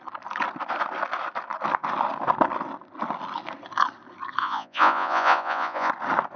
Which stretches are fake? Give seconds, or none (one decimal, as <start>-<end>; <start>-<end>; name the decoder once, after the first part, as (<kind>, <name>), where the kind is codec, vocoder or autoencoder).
4.4-5.9 (vocoder, Vocos)